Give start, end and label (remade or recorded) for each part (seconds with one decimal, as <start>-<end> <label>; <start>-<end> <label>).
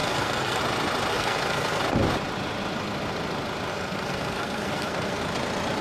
0.0-0.6 remade; 0.6-1.1 recorded; 1.1-1.8 remade; 1.8-3.7 recorded; 3.7-5.2 remade; 5.2-5.8 recorded